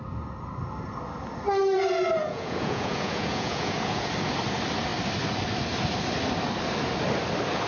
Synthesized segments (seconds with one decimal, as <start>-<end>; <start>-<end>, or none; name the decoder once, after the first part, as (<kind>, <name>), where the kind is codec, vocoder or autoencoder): 2.2-4.1 (vocoder, Vocos)